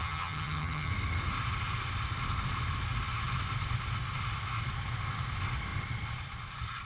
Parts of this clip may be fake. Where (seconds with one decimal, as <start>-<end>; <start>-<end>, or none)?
0.0-0.9

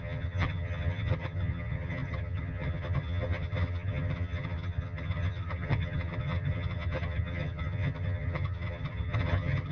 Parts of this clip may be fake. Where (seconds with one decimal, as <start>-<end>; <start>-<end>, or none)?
0.0-9.7

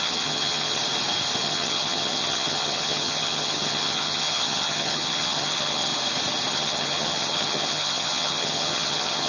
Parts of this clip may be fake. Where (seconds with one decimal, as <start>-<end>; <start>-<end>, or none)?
0.0-0.8; 1.4-5.9; 6.5-9.3

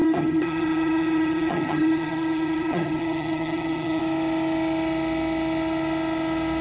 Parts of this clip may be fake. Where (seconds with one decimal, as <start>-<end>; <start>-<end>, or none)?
0.0-4.0

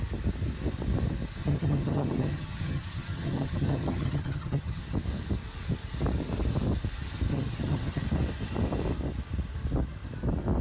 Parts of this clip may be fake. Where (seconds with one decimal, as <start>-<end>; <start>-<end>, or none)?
1.4-4.8; 7.3-8.0

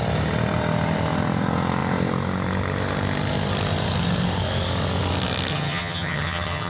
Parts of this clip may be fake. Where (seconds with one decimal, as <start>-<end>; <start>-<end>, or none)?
5.5-6.7

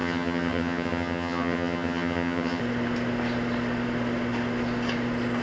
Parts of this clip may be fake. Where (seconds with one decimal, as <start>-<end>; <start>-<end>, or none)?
0.0-2.6